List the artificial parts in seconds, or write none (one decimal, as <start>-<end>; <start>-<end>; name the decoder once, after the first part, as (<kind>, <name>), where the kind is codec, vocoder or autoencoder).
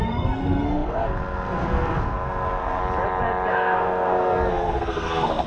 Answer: 0.0-2.8 (codec, SNAC); 3.5-5.5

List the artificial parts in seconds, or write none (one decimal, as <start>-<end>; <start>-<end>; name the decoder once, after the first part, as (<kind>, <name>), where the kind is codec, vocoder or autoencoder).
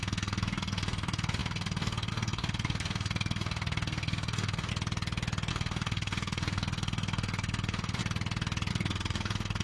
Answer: 0.0-4.7 (codec, SNAC); 5.5-8.0; 8.7-9.6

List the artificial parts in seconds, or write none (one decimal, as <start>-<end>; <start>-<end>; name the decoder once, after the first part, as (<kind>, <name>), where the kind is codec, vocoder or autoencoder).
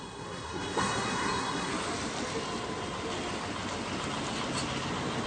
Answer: 0.0-1.7 (codec, SNAC)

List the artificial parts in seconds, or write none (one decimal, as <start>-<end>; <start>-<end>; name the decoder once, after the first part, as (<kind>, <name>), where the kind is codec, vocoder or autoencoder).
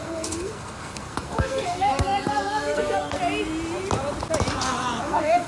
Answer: 0.0-3.2 (codec, SNAC); 5.0-5.5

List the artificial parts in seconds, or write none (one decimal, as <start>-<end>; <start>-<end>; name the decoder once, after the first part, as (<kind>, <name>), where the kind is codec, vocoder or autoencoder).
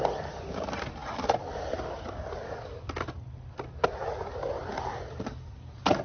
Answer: none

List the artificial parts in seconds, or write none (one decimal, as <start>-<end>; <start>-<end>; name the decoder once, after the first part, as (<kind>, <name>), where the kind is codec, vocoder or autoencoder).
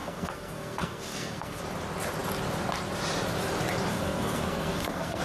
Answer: 0.0-1.6 (codec, SNAC); 3.9-5.2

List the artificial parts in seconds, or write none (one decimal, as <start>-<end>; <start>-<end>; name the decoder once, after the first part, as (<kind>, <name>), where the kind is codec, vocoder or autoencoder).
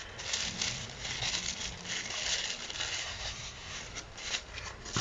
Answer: 3.0-3.8 (codec, SNAC)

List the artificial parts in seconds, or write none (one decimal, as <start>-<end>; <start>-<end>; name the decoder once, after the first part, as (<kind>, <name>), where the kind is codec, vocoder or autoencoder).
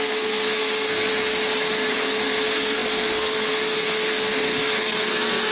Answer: 0.0-1.1 (codec, SNAC); 1.9-5.5